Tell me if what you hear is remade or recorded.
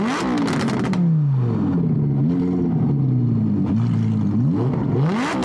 recorded